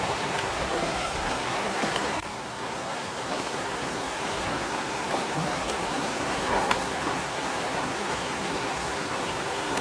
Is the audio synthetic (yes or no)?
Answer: yes